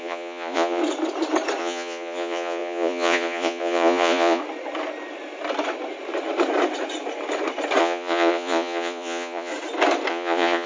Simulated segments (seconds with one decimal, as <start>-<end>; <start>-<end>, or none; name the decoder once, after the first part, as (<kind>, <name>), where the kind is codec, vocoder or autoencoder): 0.0-0.8 (vocoder, Vocos); 1.6-4.4; 7.8-9.5; 10.1-10.7